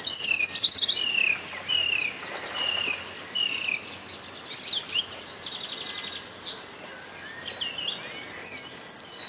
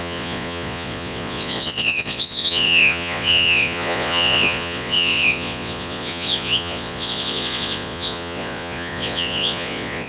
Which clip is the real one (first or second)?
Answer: first